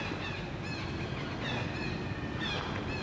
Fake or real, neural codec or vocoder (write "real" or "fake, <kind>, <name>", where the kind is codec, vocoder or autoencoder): real